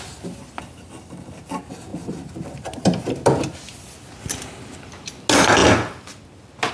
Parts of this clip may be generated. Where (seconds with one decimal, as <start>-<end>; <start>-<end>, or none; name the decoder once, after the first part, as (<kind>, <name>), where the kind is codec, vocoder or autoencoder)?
none